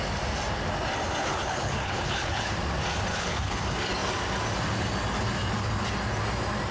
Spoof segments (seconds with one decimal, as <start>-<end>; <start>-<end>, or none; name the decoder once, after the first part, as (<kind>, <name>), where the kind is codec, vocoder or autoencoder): 1.2-2.5 (codec, HILCodec); 3.1-3.6